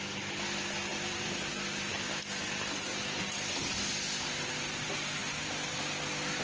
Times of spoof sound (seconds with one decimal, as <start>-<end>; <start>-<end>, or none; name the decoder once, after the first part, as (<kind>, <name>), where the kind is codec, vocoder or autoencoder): 0.9-1.5 (vocoder, BigVGAN v2); 5.2-5.8